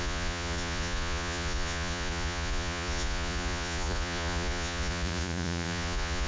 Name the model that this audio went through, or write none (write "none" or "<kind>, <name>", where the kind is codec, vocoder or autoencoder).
vocoder, Vocos